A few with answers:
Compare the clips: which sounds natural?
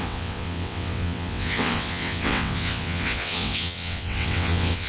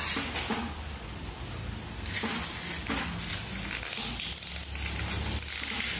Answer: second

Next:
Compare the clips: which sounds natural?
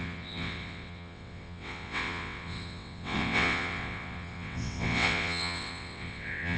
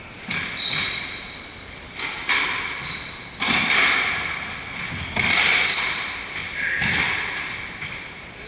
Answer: second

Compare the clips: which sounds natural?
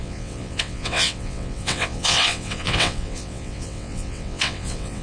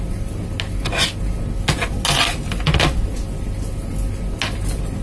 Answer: second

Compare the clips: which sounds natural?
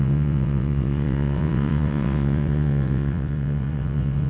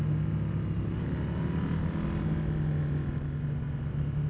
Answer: second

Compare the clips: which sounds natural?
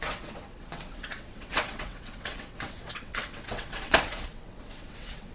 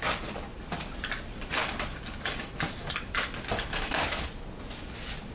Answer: second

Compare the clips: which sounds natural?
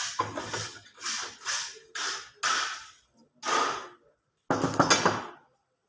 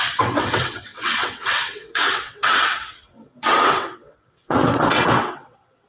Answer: first